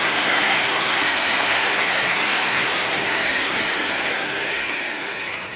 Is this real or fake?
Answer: fake